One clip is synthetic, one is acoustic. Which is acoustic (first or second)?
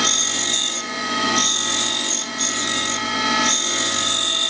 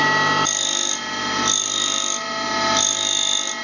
second